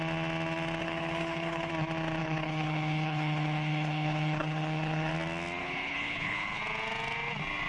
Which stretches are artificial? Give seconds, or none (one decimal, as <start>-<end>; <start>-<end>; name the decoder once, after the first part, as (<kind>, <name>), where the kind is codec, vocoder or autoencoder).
0.8-1.7 (codec, HILCodec); 2.2-5.1; 5.6-6.6